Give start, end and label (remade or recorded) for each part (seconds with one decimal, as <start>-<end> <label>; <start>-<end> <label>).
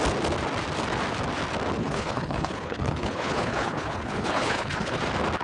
0.0-1.8 recorded; 1.8-5.0 remade; 5.0-5.4 recorded